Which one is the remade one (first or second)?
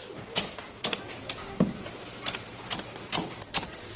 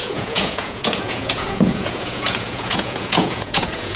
second